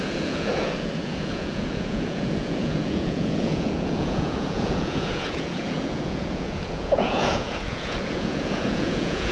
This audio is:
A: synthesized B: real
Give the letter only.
A